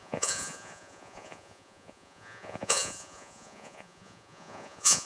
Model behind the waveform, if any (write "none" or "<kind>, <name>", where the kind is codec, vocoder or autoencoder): vocoder, Vocos